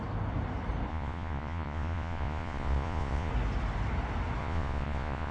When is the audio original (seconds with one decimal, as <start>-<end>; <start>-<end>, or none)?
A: 0.0-0.9; 3.3-4.4